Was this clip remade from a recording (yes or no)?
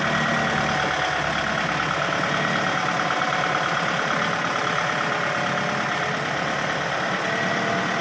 no